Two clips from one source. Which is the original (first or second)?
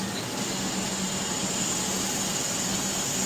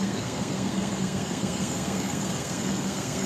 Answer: first